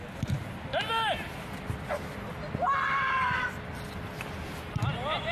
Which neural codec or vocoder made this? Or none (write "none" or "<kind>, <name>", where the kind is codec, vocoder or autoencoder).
none